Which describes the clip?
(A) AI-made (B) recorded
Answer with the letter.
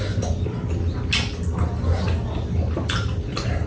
B